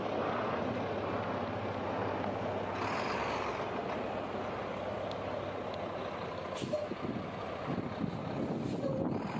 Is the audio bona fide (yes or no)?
yes